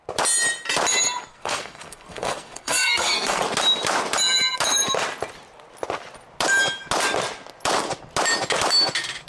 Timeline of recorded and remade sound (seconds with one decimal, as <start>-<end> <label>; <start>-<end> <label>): 0.0-1.3 recorded; 1.3-3.4 remade; 3.4-9.3 recorded